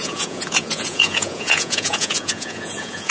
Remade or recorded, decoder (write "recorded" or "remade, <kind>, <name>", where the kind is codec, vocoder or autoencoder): remade, vocoder, Vocos